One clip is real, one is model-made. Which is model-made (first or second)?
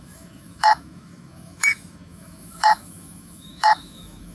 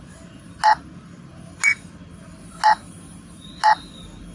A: first